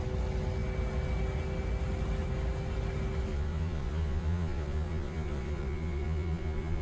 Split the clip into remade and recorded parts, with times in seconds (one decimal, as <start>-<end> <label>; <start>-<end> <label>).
0.0-3.3 recorded; 3.3-6.8 remade